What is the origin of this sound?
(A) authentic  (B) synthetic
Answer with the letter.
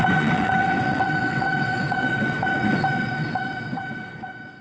B